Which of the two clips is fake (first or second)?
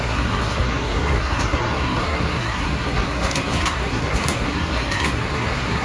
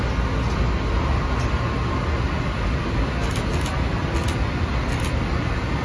first